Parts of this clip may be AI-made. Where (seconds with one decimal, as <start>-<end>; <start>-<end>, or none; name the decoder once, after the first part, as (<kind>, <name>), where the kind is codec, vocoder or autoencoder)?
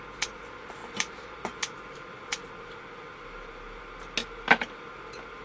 0.8-2.5 (vocoder, BigVGAN v2)